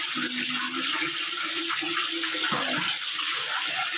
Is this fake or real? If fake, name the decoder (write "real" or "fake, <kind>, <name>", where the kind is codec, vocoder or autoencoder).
real